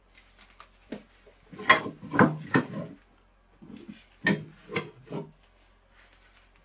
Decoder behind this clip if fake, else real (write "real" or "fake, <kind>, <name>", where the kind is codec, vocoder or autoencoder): real